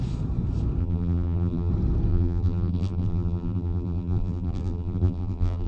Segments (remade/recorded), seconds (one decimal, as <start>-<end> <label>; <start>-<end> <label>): 0.0-0.8 recorded; 0.8-1.7 remade; 1.7-2.1 recorded; 2.1-5.7 remade